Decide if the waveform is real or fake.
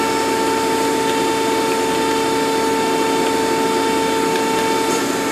real